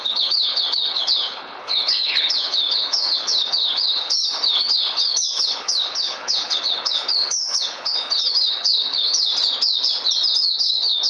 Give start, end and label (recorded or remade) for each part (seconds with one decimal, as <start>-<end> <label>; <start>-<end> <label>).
0.0-9.3 remade; 9.3-10.6 recorded; 10.6-11.1 remade